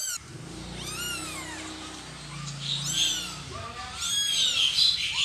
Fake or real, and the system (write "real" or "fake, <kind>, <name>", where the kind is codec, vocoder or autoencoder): real